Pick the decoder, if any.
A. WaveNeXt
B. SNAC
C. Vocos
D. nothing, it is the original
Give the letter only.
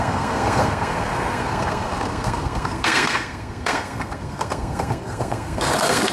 B